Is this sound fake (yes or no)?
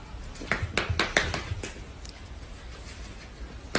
no